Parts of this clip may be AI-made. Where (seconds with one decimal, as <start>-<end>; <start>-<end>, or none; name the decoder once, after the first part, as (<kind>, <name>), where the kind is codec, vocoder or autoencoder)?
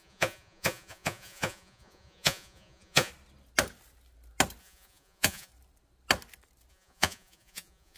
0.0-3.1 (vocoder, Vocos); 4.6-5.5; 6.7-8.0